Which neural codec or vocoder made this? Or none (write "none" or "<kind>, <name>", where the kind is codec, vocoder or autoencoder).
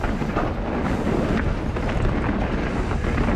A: none